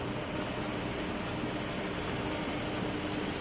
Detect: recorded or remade recorded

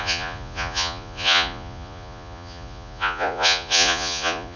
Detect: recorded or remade remade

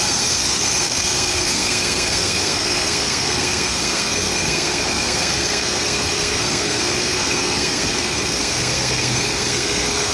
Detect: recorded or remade remade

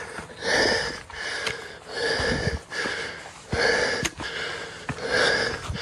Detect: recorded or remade recorded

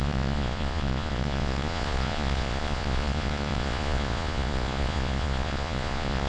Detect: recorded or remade remade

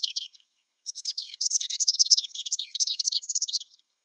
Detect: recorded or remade remade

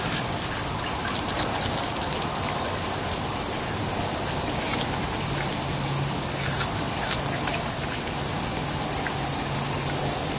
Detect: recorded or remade recorded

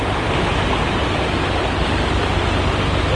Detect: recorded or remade recorded